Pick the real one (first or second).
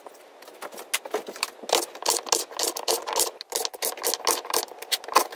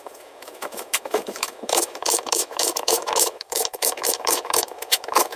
first